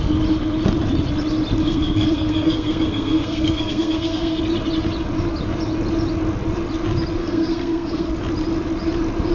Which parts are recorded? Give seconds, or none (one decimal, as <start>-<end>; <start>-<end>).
0.0-1.6; 4.4-7.2; 8.1-9.3